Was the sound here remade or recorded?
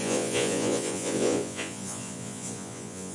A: remade